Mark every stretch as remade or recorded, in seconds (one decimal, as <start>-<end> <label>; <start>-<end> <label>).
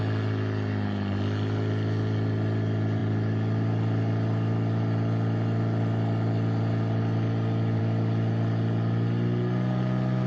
0.0-10.3 recorded